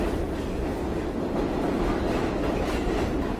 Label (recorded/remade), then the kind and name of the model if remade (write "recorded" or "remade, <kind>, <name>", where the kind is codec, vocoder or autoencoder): recorded